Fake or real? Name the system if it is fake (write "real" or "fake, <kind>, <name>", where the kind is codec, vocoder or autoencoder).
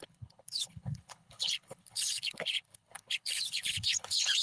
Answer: fake, codec, HILCodec